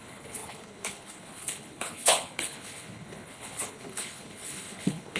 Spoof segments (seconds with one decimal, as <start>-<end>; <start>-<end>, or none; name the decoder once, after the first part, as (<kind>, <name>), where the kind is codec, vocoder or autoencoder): 0.0-5.2 (codec, HILCodec)